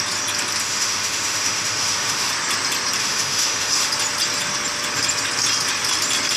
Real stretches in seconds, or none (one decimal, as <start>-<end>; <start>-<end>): 0.0-0.6; 2.3-3.0; 3.9-6.4